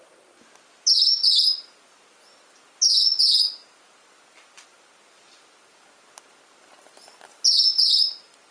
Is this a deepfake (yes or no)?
no